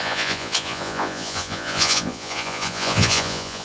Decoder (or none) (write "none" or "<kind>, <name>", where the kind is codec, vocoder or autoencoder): vocoder, Vocos